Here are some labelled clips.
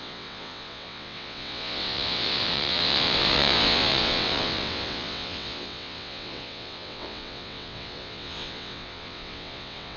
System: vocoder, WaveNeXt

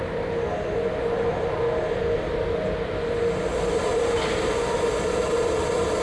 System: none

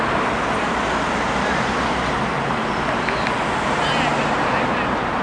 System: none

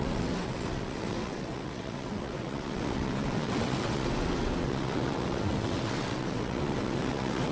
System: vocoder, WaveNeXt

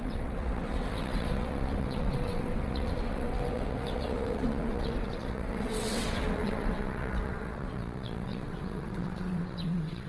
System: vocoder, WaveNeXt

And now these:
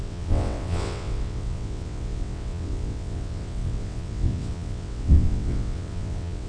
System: vocoder, WaveNeXt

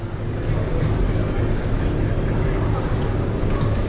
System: none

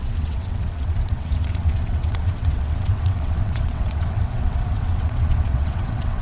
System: vocoder, WaveNeXt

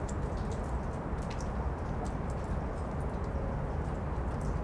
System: none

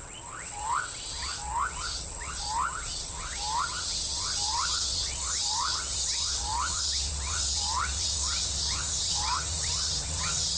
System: vocoder, WaveNeXt